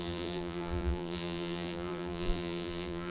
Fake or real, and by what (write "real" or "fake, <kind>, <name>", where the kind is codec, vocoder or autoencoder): fake, vocoder, BigVGAN v2